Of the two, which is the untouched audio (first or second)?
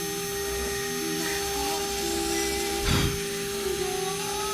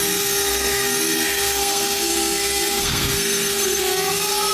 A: first